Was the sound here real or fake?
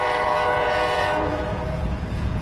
fake